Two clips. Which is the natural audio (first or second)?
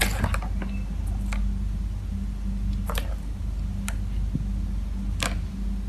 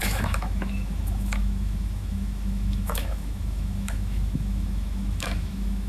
first